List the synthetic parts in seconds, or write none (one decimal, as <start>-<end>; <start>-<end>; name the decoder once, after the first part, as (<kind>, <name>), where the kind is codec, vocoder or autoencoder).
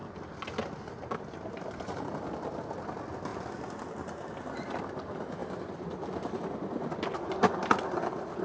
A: none